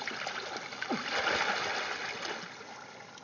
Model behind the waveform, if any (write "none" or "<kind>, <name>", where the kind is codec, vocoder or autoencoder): none